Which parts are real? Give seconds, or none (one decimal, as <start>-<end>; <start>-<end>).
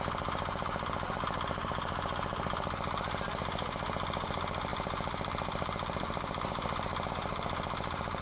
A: none